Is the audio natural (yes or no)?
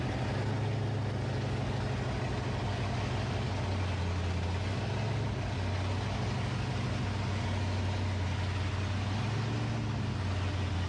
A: yes